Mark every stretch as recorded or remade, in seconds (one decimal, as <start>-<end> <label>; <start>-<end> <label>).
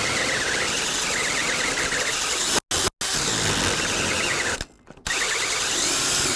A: 0.0-6.4 recorded